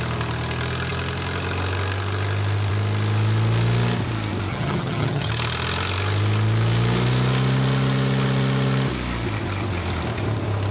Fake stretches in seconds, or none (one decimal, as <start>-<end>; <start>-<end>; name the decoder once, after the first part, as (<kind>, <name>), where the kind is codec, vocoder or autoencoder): 4.5-5.3 (vocoder, HiFi-GAN)